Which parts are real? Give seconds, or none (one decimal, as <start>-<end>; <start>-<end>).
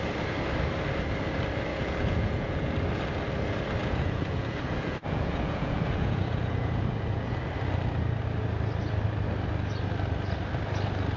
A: 0.0-1.7; 2.7-3.8; 7.4-11.2